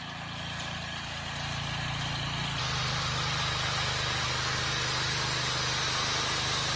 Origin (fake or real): real